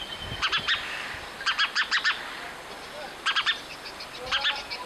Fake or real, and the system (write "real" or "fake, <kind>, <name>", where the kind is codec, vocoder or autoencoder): real